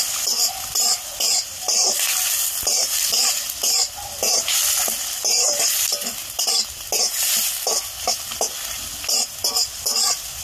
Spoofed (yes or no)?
no